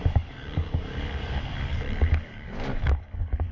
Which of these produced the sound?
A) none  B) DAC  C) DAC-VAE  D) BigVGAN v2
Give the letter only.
B